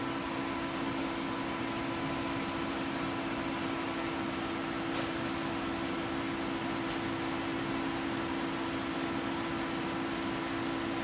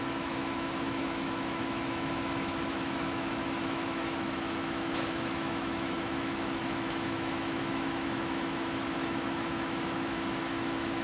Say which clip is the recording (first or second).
first